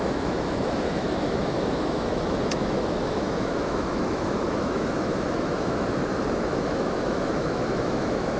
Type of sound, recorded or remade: remade